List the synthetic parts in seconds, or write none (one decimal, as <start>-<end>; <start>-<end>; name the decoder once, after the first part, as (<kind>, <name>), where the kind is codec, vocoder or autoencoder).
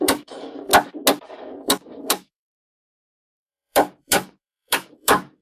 0.0-0.7 (codec, DAC); 1.2-5.4